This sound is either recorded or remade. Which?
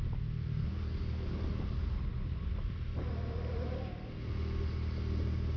recorded